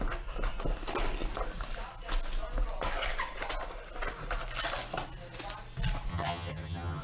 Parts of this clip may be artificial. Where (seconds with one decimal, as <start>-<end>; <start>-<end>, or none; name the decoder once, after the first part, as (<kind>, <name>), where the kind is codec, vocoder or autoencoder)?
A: 6.1-7.0 (vocoder, HiFi-GAN)